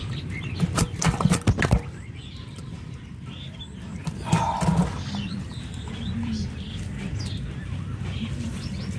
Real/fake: fake